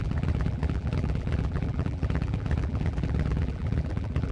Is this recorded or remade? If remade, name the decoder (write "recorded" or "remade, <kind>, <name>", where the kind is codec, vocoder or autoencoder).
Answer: remade, vocoder, BigVGAN v2